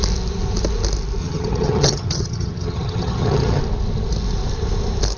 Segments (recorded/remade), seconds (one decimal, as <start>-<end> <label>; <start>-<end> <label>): 0.0-1.2 recorded; 1.2-3.6 remade; 3.6-5.2 recorded